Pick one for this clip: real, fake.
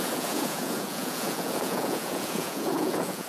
fake